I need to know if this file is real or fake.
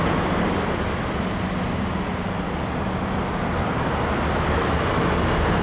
real